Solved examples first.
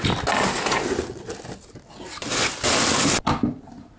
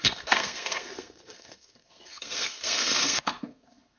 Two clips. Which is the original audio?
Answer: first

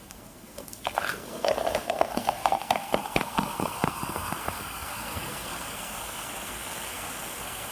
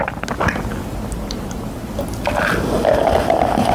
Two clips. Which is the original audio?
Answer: second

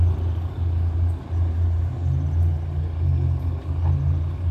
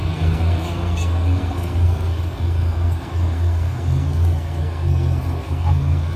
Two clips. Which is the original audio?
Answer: first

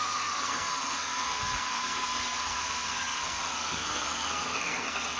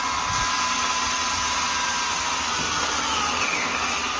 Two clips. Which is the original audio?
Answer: second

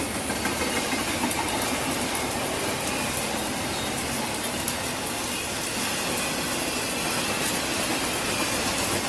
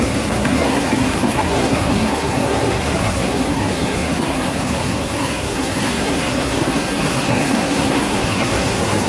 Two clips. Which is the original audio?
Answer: first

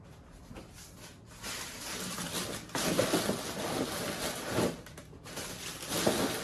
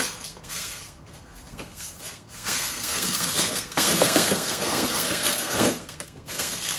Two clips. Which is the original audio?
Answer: first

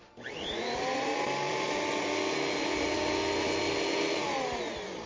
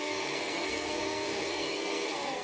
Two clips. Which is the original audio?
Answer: first